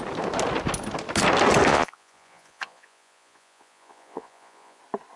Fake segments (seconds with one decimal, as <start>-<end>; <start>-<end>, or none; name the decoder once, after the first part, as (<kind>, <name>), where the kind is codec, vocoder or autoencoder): 1.7-4.8 (vocoder, Vocos)